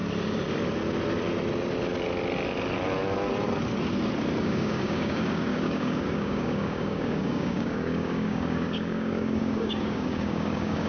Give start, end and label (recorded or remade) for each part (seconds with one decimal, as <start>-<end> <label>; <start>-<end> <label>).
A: 0.0-4.4 recorded; 4.4-10.9 remade